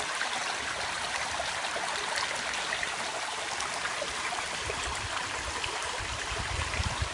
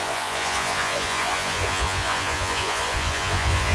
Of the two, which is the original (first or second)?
first